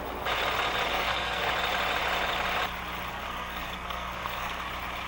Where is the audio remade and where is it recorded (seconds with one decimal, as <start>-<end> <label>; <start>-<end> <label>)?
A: 0.0-0.9 recorded; 0.9-1.5 remade; 1.5-3.1 recorded; 3.1-4.6 remade; 4.6-5.1 recorded